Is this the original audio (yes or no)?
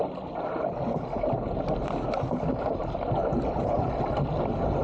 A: yes